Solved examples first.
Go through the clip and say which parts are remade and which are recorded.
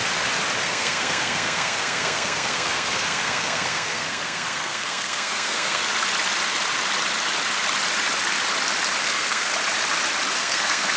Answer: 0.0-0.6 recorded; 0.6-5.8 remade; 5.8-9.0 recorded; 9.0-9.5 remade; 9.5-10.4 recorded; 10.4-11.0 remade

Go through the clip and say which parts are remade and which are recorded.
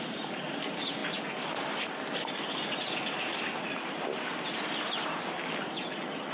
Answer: 0.0-6.3 recorded